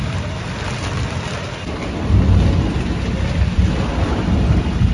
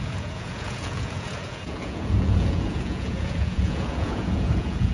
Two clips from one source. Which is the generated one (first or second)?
second